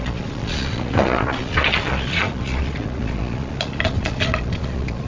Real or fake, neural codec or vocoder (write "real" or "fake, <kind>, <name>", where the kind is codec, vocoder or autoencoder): fake, vocoder, Vocos